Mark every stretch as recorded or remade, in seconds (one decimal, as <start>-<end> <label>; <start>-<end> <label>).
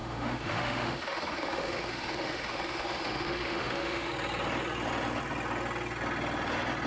0.0-4.1 remade; 4.1-6.9 recorded